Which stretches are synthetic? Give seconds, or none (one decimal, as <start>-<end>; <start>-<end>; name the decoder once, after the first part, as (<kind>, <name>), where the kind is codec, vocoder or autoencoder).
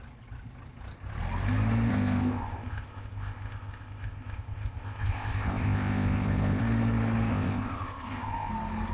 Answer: 1.9-6.6 (codec, ZipCodec); 7.3-8.5